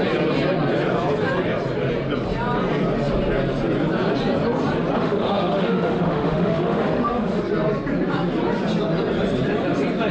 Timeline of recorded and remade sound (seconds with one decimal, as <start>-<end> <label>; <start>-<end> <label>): 0.0-5.0 recorded; 5.0-7.4 remade; 7.4-10.1 recorded